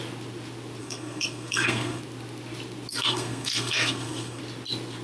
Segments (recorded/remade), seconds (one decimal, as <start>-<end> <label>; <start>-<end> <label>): 0.0-0.8 recorded; 0.8-2.0 remade; 2.0-2.9 recorded; 2.9-4.4 remade; 4.4-5.0 recorded

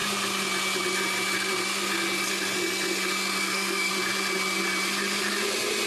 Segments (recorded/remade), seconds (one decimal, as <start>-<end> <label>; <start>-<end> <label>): 0.0-3.4 recorded; 3.4-3.9 remade; 3.9-5.9 recorded